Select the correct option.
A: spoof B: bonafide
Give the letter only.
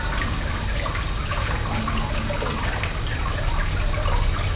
B